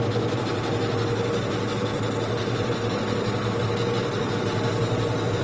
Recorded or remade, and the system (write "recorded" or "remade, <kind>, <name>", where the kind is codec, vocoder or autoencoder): recorded